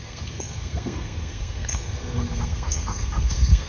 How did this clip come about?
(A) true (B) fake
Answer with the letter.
B